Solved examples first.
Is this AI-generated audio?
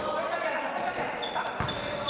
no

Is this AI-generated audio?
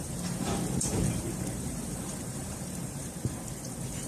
yes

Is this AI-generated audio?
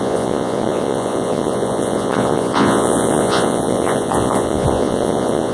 yes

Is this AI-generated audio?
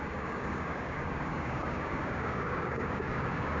yes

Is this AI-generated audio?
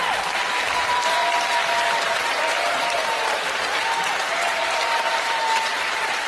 yes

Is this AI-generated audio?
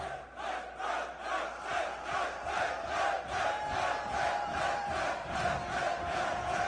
no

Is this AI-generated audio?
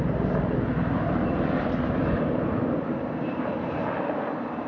no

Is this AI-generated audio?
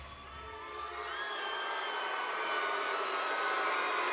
no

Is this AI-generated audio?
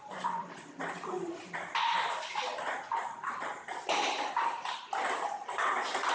no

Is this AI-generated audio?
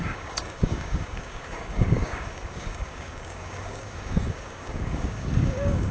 yes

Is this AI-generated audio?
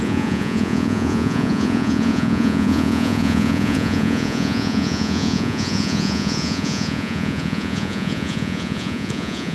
yes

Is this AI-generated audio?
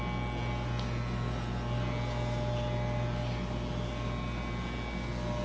no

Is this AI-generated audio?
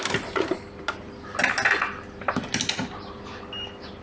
no